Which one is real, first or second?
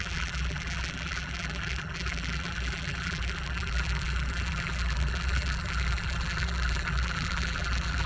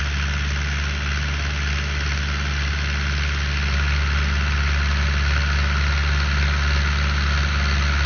second